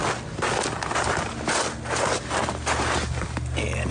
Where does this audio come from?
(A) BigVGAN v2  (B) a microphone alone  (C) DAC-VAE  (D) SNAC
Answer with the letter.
B